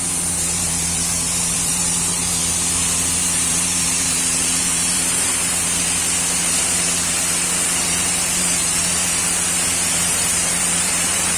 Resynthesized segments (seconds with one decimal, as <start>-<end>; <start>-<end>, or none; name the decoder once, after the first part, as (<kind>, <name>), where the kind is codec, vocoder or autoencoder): 0.0-2.4 (vocoder, BigVGAN v2); 3.2-5.3; 7.8-9.0; 9.9-11.4